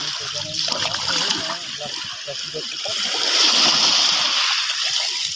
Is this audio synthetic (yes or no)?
no